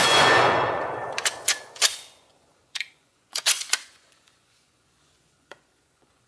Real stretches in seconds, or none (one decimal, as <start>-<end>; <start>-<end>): none